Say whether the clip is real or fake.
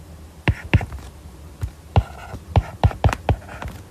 real